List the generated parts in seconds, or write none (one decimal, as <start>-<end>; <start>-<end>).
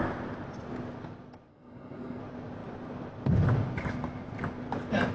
1.5-2.2